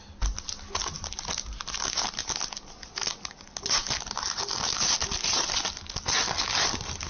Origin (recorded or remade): recorded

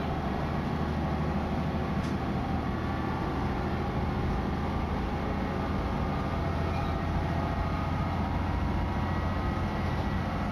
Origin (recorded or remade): recorded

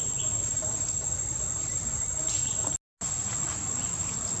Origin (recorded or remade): recorded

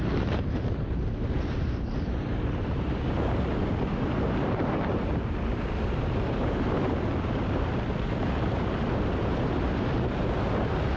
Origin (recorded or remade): remade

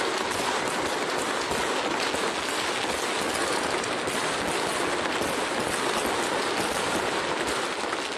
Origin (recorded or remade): recorded